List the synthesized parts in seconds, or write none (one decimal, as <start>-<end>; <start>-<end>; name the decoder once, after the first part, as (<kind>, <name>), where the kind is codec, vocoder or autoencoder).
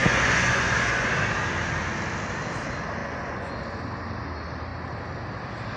0.0-1.1 (vocoder, Vocos); 3.0-3.5